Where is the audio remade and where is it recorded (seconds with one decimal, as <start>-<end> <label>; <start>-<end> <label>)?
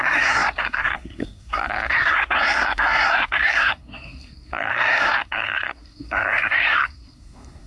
0.0-7.7 remade